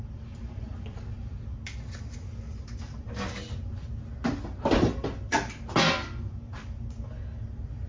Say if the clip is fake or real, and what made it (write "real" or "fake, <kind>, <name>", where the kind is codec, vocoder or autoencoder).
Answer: real